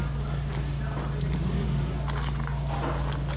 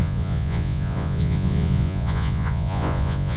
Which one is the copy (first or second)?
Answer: second